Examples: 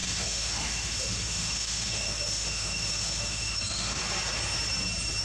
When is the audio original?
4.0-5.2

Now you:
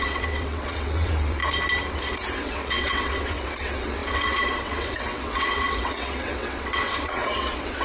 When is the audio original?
1.4-2.4

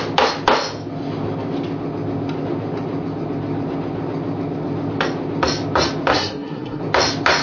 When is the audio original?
0.0-6.1; 6.8-7.4